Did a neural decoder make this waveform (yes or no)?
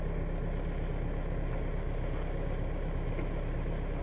no